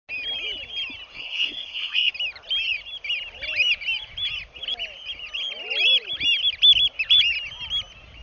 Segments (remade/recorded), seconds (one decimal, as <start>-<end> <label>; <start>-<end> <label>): 0.0-1.1 recorded; 1.1-2.1 remade; 2.1-8.2 recorded